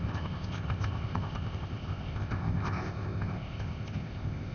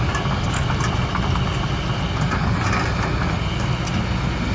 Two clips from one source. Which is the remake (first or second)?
first